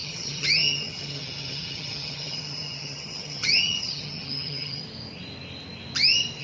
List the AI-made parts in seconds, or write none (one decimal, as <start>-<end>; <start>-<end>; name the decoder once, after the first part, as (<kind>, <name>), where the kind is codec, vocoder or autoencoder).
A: 0.0-4.8 (vocoder, HiFi-GAN)